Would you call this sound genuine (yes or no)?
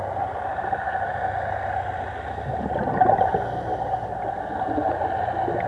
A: yes